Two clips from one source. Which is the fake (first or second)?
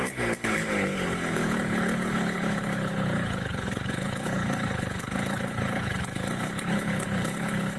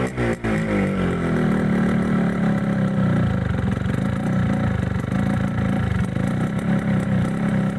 first